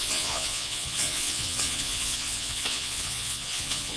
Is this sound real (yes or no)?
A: no